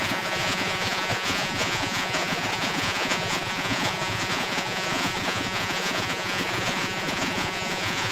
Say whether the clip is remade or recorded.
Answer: remade